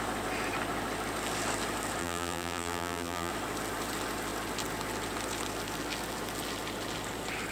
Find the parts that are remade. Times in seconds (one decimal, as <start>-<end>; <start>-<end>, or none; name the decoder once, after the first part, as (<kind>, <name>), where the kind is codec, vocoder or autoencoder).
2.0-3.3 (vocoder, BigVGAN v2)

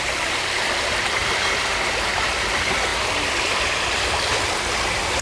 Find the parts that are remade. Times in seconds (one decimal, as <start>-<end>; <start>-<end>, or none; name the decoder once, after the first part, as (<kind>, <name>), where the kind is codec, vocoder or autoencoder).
0.0-5.2 (vocoder, BigVGAN v2)

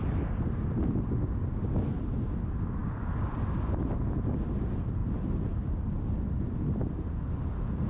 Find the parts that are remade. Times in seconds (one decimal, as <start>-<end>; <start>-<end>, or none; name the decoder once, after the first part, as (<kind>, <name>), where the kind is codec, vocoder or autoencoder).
2.8-3.5 (vocoder, BigVGAN v2); 5.0-7.2

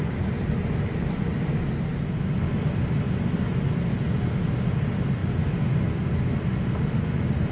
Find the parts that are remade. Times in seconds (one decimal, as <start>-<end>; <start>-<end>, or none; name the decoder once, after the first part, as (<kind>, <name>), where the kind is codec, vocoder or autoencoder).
none

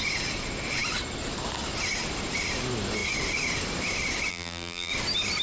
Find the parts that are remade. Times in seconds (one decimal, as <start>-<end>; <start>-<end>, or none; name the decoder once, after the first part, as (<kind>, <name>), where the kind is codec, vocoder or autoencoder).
4.3-4.9 (vocoder, BigVGAN v2)

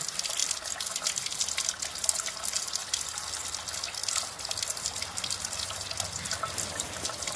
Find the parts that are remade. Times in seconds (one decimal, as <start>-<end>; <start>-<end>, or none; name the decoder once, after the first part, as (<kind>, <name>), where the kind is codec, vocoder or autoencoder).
2.8-3.6 (vocoder, BigVGAN v2); 4.0-5.3